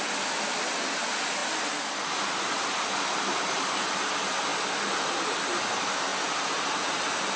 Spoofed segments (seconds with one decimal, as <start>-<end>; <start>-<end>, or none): none